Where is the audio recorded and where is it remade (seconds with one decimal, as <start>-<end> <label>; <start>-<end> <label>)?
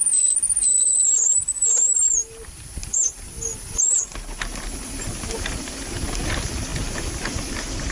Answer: 0.0-7.9 recorded